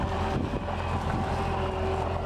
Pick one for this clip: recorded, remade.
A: recorded